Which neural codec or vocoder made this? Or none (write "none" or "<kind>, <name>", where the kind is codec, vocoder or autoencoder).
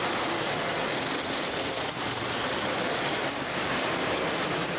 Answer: none